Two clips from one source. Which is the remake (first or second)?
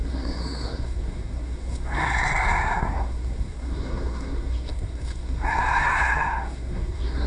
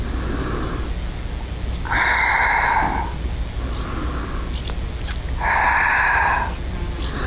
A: first